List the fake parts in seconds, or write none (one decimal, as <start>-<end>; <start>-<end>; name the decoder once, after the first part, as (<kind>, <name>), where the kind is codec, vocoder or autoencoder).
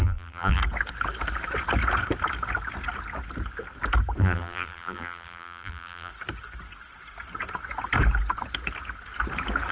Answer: 0.0-0.6 (vocoder, BigVGAN v2); 4.2-6.1